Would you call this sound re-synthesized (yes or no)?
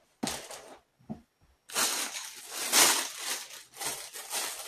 no